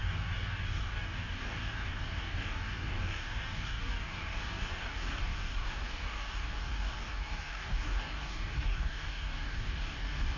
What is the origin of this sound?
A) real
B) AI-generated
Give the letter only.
B